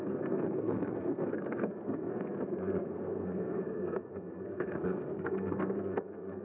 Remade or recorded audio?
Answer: remade